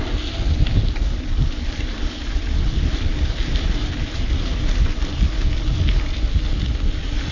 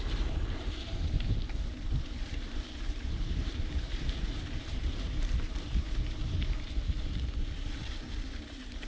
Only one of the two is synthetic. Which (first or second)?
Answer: second